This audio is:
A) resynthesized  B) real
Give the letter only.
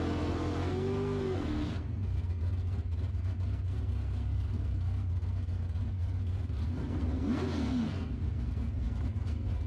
A